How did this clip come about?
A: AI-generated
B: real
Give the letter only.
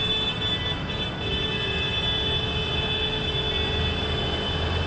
B